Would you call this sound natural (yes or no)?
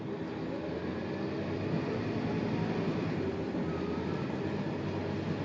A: yes